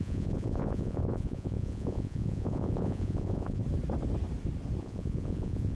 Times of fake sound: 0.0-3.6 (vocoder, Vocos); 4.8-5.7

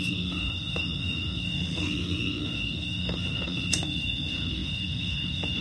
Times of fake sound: 0.0-5.6 (autoencoder, DAC-VAE)